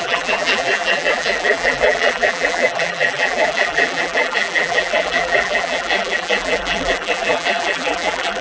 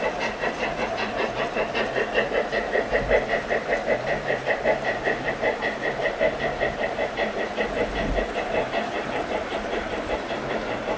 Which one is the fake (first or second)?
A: first